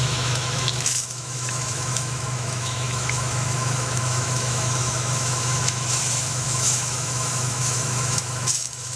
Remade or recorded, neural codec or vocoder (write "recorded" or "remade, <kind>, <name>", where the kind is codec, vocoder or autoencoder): remade, autoencoder, DAC-VAE